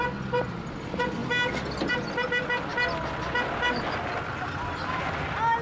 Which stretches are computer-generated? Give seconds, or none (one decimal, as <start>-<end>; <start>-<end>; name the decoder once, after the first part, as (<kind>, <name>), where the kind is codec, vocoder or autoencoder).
none